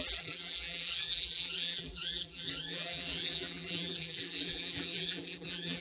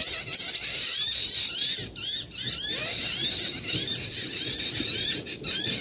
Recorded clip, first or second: second